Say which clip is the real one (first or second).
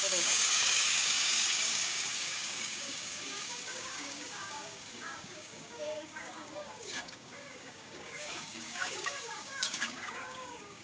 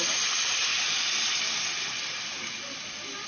second